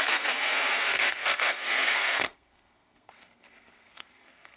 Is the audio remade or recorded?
remade